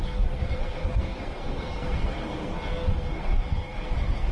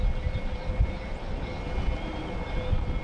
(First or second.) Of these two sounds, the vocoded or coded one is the first